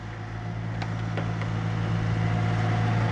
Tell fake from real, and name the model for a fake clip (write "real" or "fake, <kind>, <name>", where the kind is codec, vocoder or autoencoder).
real